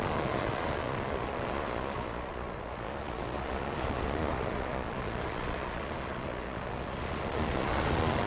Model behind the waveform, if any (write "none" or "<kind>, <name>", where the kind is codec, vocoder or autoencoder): vocoder, Vocos